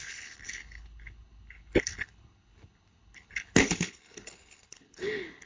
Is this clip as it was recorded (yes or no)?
no